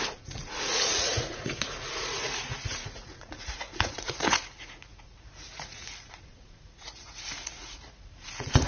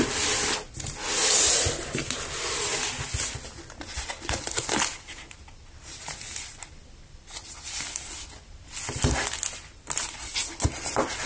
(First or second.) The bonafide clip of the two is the second